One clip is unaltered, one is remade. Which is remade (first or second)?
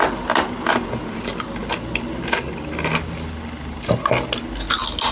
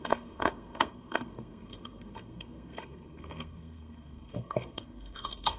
second